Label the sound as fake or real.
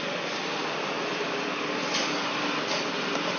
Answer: real